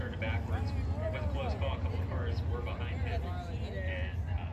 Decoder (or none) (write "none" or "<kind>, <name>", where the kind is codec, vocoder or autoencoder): none